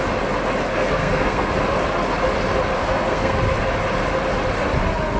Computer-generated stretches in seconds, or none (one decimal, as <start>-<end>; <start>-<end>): 0.7-1.5; 2.8-3.4